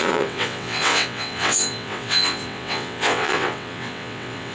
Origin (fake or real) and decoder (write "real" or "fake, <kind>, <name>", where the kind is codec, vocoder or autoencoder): fake, vocoder, WaveNeXt